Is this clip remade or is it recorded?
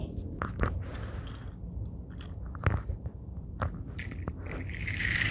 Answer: recorded